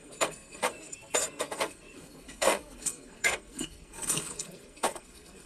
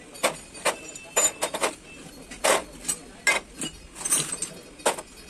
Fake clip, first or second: first